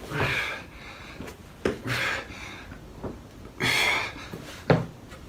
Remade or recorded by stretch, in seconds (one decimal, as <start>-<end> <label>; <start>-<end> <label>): 0.0-5.3 recorded